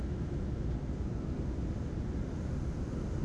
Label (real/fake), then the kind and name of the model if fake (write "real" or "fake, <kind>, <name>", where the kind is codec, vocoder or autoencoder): real